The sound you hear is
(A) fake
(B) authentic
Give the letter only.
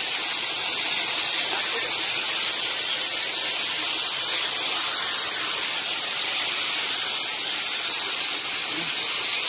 B